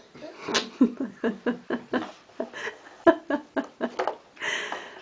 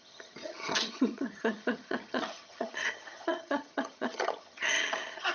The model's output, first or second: second